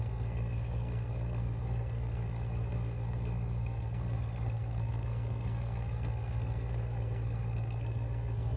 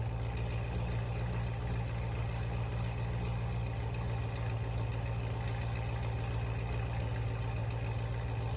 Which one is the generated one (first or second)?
first